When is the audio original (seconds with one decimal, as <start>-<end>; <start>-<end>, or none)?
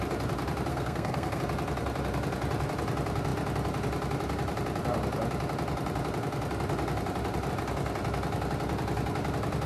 0.0-0.7; 1.4-9.7